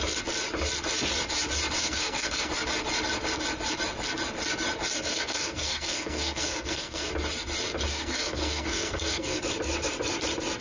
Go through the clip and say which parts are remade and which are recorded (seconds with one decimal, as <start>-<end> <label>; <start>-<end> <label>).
0.0-1.8 recorded; 1.8-2.5 remade; 2.5-5.1 recorded; 5.1-7.1 remade; 7.1-7.9 recorded; 7.9-9.4 remade; 9.4-10.6 recorded